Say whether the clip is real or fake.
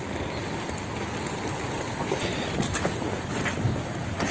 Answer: real